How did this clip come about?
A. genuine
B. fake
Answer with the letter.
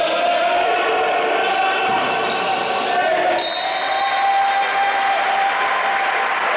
A